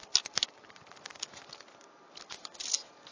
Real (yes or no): yes